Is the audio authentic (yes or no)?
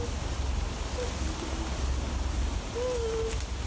yes